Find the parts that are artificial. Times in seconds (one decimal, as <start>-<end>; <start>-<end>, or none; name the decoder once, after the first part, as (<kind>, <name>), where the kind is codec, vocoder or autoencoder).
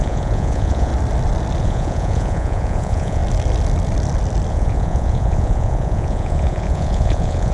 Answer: 0.0-0.9 (vocoder, Vocos); 1.6-3.2; 4.5-7.5